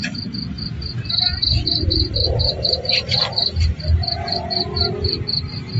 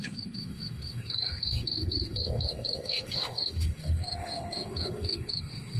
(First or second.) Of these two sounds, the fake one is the second